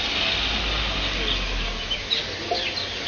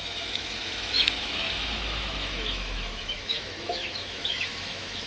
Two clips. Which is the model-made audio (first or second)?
second